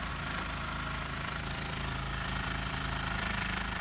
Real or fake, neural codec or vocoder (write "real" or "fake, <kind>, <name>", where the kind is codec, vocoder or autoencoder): fake, vocoder, BigVGAN v2